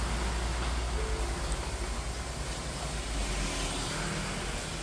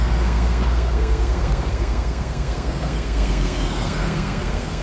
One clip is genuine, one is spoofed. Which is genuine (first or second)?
first